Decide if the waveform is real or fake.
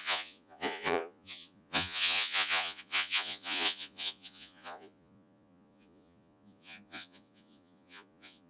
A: fake